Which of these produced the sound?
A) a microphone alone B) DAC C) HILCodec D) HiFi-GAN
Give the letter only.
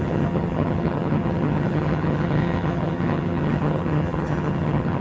D